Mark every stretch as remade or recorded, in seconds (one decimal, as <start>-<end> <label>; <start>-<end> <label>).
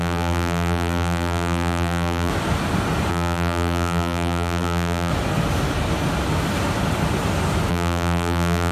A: 0.0-2.3 remade; 2.3-3.1 recorded; 3.1-5.1 remade; 5.1-7.7 recorded; 7.7-8.7 remade